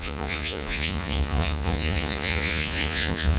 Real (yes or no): no